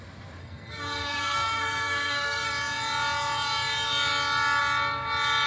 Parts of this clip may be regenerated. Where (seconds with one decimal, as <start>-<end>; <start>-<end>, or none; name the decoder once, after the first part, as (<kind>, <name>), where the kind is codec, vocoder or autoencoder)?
0.4-2.5 (codec, SNAC)